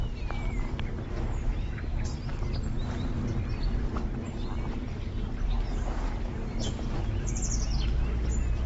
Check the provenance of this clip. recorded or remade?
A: recorded